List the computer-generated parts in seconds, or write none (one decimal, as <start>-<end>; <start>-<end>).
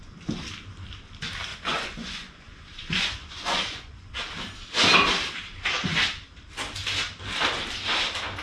1.5-4.1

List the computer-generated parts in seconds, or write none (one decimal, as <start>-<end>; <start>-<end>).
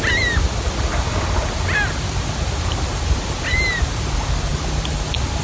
none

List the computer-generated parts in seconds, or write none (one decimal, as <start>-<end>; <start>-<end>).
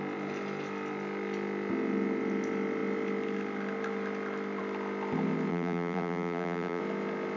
5.5-6.8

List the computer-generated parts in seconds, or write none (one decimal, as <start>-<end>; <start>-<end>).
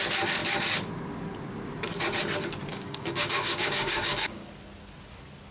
2.7-4.5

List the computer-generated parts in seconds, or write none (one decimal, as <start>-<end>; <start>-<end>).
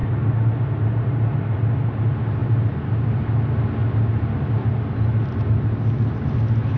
none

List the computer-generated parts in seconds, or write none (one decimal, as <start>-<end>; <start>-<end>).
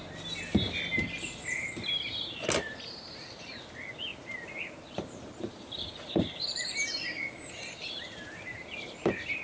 4.1-9.4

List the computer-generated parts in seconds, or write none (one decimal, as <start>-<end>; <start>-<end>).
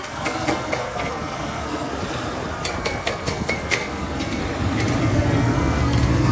0.0-1.9; 2.8-4.4; 5.0-6.3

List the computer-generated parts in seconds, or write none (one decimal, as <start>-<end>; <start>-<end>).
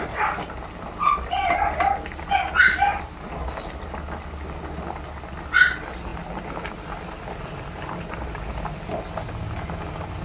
none